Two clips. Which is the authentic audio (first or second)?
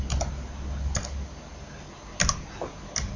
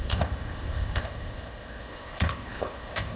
first